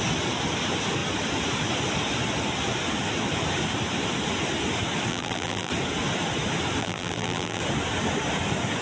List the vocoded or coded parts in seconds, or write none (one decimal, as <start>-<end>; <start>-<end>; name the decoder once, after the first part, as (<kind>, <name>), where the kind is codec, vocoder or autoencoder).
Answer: 5.1-5.7 (vocoder, BigVGAN v2); 6.8-7.6